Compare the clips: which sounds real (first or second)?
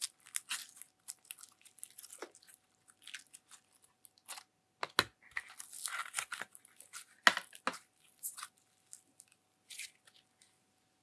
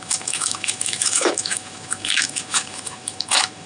first